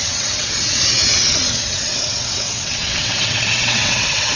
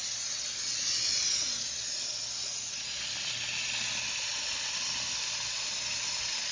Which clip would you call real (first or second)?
second